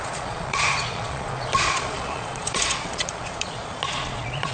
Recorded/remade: remade